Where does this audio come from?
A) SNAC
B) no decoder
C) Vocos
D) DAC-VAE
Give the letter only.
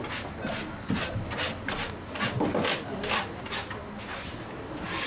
B